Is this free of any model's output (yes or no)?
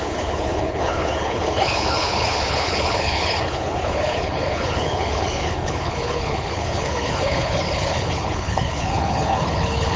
no